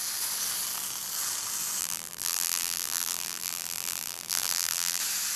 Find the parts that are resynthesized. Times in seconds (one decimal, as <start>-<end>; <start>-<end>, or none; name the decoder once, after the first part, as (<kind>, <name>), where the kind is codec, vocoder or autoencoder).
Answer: 1.8-5.0 (vocoder, BigVGAN v2)